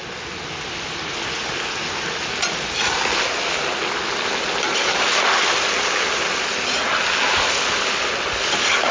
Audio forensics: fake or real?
real